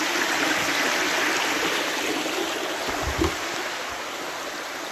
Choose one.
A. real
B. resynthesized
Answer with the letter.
A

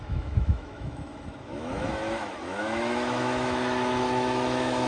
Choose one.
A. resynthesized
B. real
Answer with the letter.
A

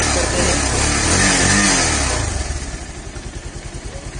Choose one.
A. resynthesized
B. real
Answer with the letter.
B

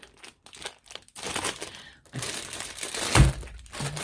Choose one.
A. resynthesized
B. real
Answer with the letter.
B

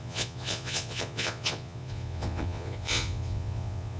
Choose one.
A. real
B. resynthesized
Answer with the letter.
B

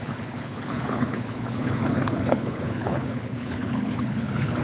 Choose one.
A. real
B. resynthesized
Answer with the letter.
B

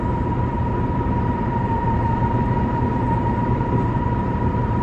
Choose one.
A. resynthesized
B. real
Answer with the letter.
A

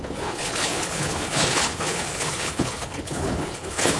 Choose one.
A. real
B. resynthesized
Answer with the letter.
B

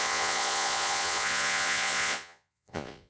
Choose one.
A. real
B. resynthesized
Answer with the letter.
B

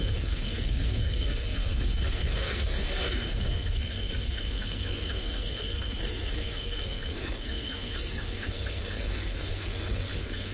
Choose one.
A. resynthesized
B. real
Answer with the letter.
A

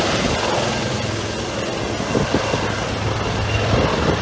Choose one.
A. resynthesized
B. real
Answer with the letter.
B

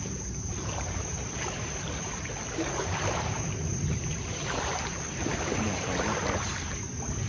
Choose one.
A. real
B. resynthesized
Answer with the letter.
B